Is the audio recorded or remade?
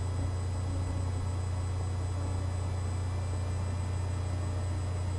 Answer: recorded